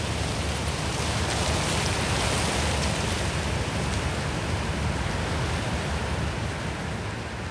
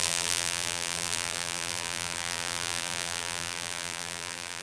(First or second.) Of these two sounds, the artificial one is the second